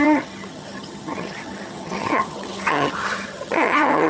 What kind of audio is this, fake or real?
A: fake